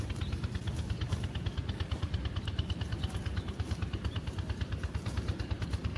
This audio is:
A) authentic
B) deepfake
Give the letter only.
A